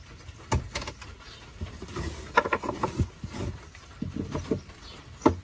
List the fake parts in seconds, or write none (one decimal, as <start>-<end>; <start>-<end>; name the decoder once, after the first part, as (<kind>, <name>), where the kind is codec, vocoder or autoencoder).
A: 1.5-4.7 (vocoder, BigVGAN v2)